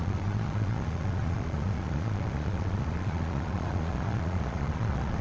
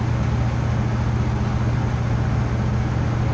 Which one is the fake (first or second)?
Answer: first